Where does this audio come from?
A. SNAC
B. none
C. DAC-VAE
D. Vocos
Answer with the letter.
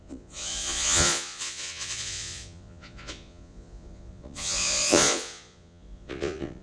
D